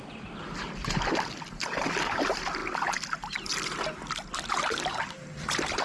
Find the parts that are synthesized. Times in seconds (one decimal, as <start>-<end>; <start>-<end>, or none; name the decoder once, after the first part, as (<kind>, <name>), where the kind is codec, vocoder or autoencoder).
none